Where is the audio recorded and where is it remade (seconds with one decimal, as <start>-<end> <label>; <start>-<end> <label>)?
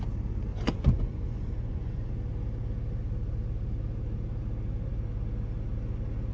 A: 0.0-0.5 recorded; 0.5-2.1 remade; 2.1-6.3 recorded